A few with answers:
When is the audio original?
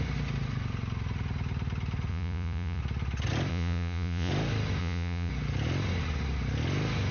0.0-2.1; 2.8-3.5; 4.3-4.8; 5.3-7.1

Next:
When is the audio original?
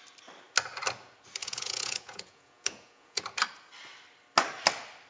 0.0-1.4; 3.2-5.1